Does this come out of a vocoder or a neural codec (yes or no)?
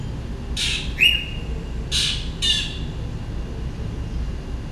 no